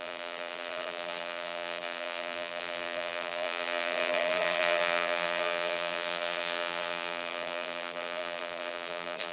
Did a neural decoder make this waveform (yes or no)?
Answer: yes